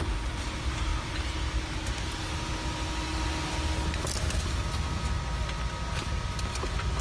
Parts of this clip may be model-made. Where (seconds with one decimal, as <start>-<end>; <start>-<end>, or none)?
none